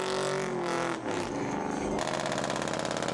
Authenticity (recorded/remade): recorded